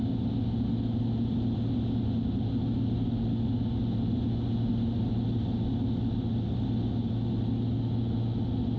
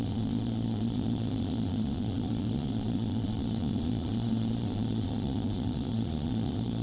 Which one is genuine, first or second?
first